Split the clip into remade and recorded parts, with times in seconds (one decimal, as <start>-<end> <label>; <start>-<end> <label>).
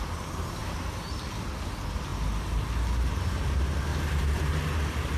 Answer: 0.0-3.9 recorded; 3.9-4.5 remade; 4.5-5.2 recorded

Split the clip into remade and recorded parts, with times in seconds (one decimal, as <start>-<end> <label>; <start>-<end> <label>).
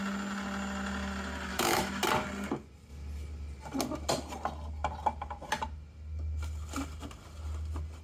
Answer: 0.0-1.5 recorded; 1.5-2.0 remade; 2.0-8.0 recorded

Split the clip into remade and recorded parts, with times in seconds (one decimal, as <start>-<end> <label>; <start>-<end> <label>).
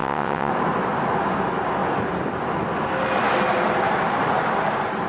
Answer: 0.0-0.5 remade; 0.5-5.1 recorded